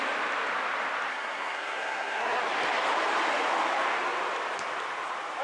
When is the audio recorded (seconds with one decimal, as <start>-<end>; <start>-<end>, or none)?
0.0-1.1; 2.4-5.4

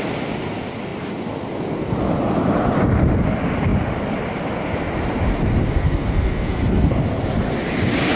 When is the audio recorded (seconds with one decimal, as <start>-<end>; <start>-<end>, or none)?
0.0-5.6; 7.0-8.2